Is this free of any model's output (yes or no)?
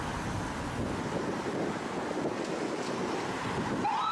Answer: yes